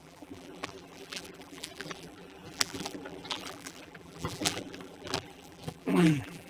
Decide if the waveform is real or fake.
fake